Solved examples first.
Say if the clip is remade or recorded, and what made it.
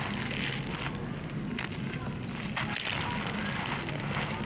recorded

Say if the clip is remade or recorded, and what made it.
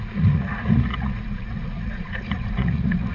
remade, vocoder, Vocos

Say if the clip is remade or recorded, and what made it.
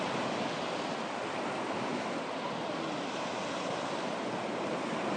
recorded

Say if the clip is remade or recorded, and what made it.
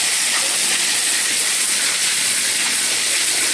remade, vocoder, Vocos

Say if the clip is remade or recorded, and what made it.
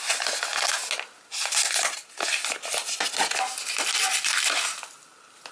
recorded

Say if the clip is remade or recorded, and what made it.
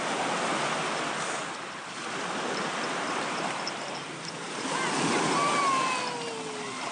recorded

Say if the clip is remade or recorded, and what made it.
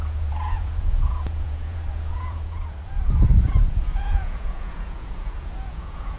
remade, vocoder, Vocos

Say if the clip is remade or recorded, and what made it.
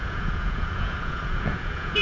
remade, vocoder, Vocos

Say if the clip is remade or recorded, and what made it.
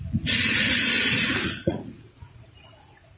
remade, vocoder, Vocos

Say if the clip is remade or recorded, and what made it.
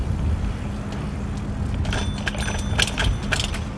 recorded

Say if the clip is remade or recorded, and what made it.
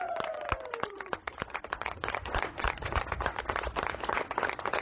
remade, vocoder, Vocos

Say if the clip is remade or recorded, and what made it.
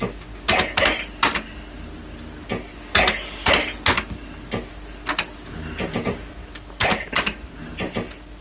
recorded